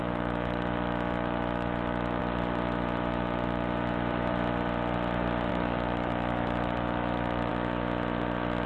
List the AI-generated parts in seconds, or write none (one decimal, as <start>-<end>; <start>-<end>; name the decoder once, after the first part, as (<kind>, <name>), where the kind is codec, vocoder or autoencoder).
0.0-2.2 (autoencoder, DAC-VAE); 5.5-7.5